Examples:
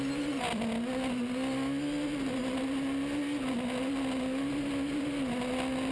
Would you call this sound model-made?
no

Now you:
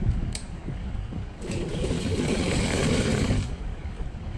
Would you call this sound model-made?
yes